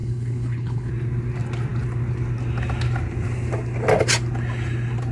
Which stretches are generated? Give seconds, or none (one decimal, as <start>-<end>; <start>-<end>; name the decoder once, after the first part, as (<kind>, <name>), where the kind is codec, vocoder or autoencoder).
0.0-0.9 (codec, HILCodec)